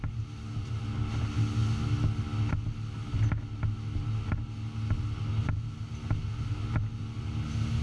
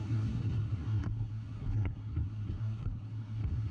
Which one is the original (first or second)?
first